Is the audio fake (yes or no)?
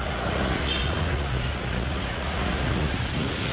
yes